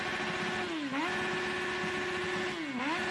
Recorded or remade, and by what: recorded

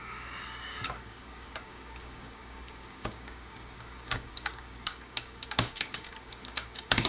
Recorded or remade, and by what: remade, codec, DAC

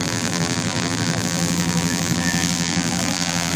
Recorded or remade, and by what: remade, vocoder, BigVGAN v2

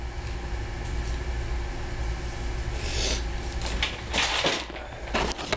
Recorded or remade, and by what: recorded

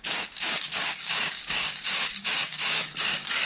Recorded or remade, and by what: remade, codec, DAC